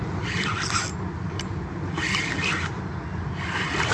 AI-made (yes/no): no